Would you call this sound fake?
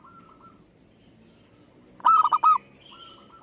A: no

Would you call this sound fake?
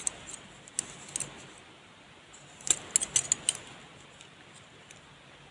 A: no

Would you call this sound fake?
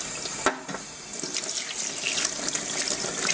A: no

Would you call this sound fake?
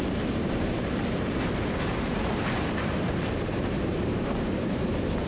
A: yes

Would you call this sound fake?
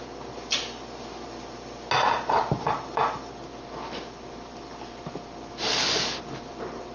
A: no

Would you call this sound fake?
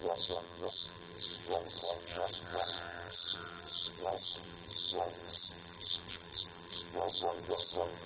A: yes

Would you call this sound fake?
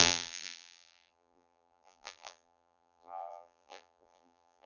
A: yes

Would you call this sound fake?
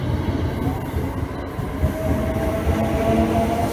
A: no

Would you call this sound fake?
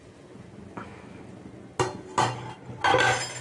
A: no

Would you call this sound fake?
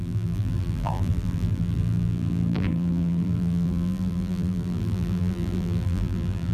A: yes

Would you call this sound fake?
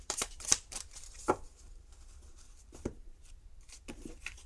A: yes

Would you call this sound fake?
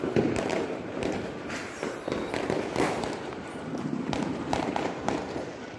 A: yes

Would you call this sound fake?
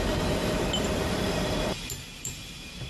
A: yes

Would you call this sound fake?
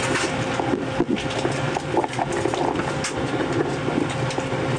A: no